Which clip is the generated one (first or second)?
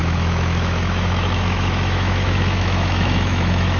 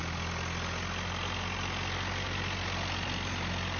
first